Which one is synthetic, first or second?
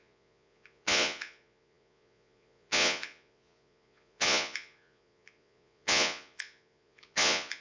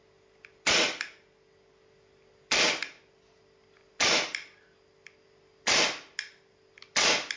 first